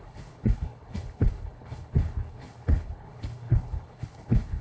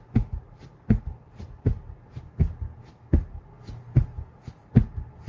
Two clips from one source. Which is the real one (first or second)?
second